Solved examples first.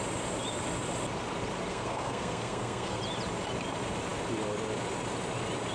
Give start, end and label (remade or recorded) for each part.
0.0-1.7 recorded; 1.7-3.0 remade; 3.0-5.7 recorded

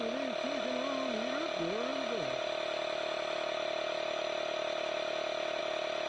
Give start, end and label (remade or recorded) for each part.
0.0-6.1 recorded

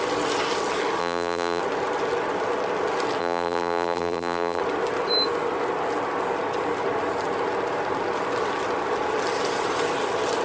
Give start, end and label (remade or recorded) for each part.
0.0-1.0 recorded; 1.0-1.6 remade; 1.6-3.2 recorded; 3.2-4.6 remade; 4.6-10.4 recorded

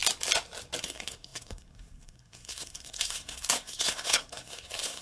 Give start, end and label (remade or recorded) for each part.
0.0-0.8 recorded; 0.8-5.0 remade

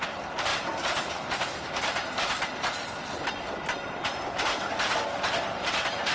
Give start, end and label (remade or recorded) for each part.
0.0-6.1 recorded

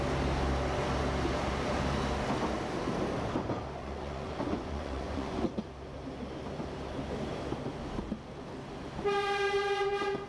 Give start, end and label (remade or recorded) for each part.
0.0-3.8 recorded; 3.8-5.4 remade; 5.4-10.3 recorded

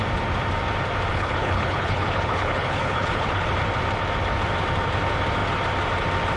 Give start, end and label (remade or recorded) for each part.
0.0-1.1 recorded; 1.1-3.5 remade; 3.5-6.4 recorded

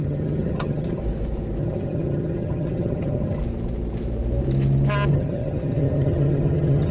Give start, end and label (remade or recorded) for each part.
0.0-1.0 remade; 1.0-1.6 recorded; 1.6-3.4 remade; 3.4-5.1 recorded; 5.1-6.9 remade